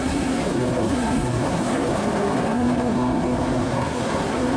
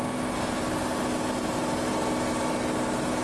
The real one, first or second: second